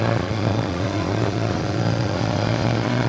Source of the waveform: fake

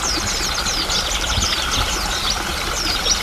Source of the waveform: real